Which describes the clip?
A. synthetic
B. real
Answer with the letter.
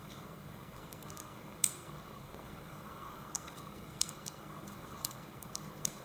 A